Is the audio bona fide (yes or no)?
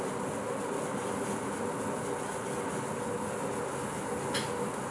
yes